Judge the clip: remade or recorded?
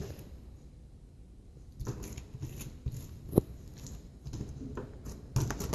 recorded